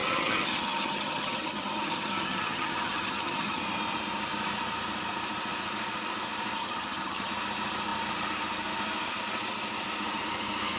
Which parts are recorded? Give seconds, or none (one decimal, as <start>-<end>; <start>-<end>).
3.6-6.6; 7.3-10.8